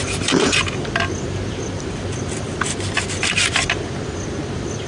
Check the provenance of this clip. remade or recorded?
recorded